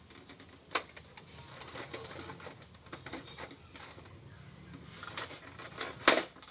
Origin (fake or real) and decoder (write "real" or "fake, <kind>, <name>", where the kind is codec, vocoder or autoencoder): real